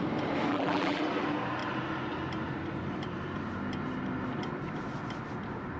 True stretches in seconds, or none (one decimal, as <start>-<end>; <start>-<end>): 0.0-0.5; 1.0-5.8